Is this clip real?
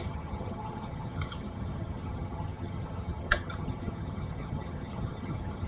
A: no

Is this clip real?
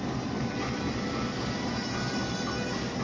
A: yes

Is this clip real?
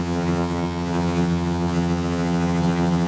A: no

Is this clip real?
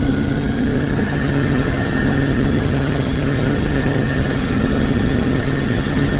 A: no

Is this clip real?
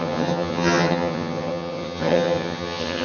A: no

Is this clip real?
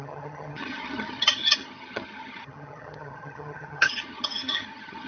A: no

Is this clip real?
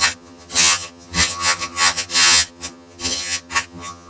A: no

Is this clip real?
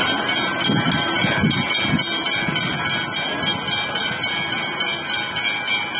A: yes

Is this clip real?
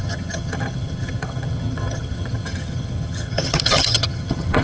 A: no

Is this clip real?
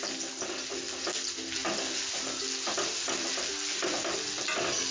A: yes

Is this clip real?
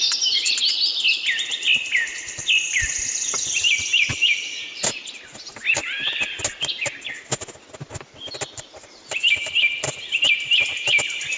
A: yes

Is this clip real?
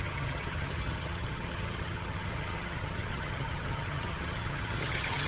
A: no